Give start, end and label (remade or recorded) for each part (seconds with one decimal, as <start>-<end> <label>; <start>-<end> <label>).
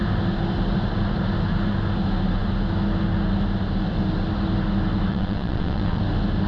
0.0-5.1 recorded; 5.1-6.0 remade; 6.0-6.5 recorded